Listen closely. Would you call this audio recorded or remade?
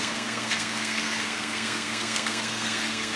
remade